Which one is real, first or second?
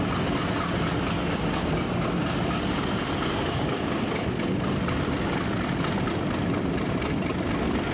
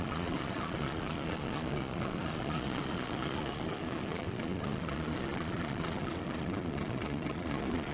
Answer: first